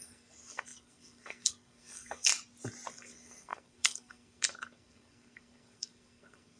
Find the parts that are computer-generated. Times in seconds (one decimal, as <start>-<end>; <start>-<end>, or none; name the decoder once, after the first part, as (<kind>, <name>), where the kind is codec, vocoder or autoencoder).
0.0-2.3 (codec, SNAC); 2.9-6.6